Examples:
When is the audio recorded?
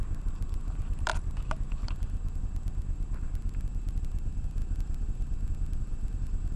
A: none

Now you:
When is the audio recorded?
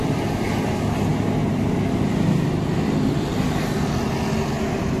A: 0.0-5.0